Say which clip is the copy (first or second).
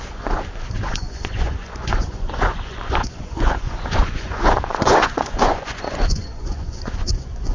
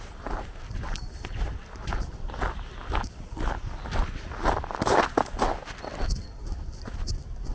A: first